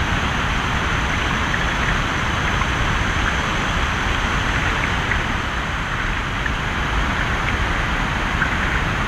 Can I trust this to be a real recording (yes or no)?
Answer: yes